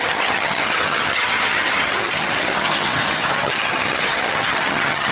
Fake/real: fake